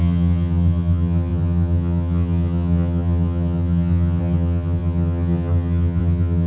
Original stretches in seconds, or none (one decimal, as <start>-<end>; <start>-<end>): none

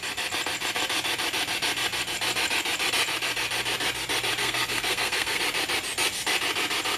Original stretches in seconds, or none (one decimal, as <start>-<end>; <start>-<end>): 0.0-4.4; 5.4-7.0

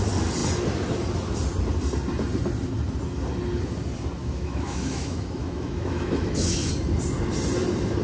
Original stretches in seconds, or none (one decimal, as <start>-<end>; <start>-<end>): 0.0-4.2; 6.7-8.0

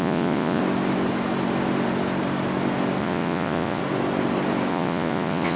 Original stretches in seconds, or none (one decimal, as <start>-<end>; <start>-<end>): 0.6-3.0; 3.8-4.7

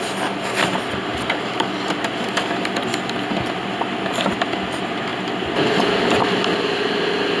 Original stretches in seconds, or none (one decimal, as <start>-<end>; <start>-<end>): 0.0-7.4